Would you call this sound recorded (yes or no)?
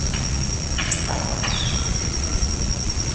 no